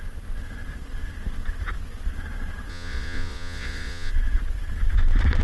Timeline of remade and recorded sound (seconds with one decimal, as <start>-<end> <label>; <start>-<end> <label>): 0.0-2.7 recorded; 2.7-4.1 remade; 4.1-5.4 recorded